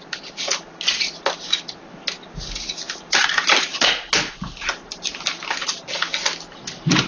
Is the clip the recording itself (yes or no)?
yes